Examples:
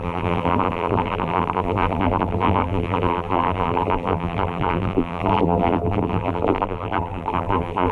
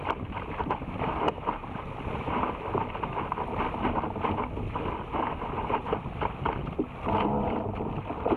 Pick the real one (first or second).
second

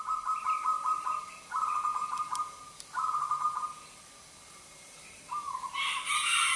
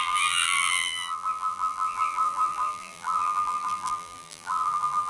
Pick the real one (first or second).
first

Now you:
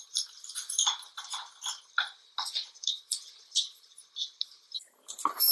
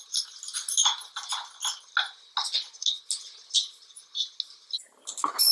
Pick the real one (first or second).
second